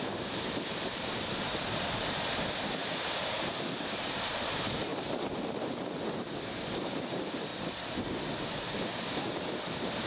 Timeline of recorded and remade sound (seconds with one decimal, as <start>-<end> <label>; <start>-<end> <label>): 0.0-7.5 remade; 7.5-9.1 recorded; 9.1-10.1 remade